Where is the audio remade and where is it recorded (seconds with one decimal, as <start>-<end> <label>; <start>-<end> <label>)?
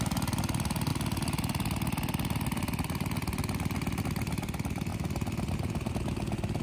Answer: 0.0-6.6 recorded